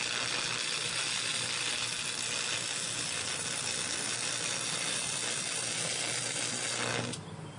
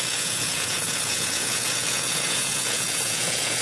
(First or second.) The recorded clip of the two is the first